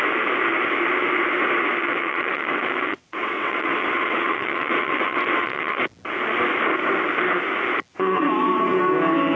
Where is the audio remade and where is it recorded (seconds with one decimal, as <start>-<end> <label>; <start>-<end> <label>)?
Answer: 0.0-1.8 recorded; 1.8-5.8 remade; 5.8-7.9 recorded; 7.9-8.8 remade; 8.8-9.4 recorded